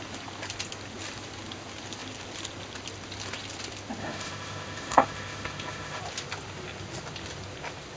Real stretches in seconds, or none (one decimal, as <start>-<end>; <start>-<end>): 0.0-4.0; 6.0-8.0